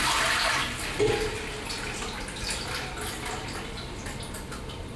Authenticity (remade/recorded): recorded